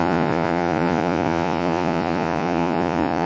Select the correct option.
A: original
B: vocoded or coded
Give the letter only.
B